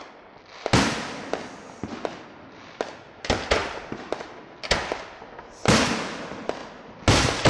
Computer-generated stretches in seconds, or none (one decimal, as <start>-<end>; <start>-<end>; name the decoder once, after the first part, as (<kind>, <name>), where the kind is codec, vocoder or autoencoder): none